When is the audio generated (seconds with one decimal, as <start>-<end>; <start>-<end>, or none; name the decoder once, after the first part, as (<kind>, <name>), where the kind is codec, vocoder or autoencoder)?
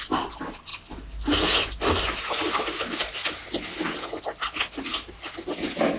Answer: none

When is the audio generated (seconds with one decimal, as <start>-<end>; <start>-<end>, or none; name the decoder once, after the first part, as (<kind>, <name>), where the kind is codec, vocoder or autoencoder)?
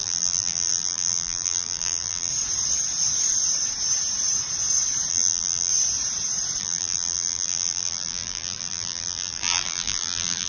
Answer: 0.0-2.3 (vocoder, BigVGAN v2); 5.1-5.7; 6.6-10.5